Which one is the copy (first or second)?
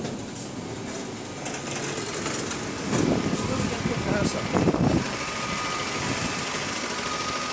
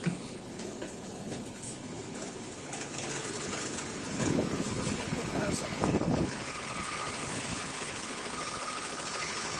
second